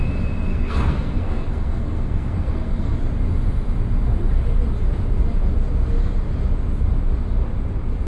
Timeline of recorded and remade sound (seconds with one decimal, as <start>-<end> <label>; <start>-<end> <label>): 0.0-0.5 recorded; 0.5-2.9 remade; 2.9-8.1 recorded